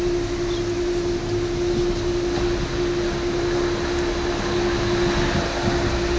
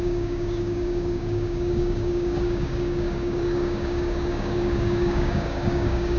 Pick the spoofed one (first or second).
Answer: second